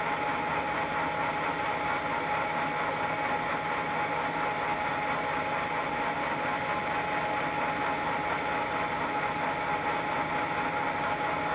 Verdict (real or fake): real